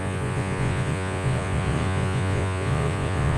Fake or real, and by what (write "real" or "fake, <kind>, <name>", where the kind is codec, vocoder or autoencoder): fake, vocoder, Vocos